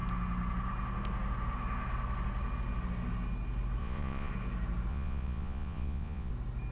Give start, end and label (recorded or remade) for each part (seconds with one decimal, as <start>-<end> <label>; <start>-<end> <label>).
0.0-3.8 recorded; 3.8-4.3 remade; 4.3-4.9 recorded; 4.9-6.3 remade; 6.3-6.7 recorded